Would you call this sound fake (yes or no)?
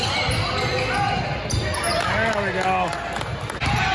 no